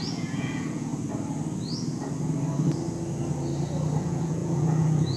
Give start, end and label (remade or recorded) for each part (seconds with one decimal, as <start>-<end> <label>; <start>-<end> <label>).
0.0-0.9 remade; 0.9-4.0 recorded; 4.0-5.2 remade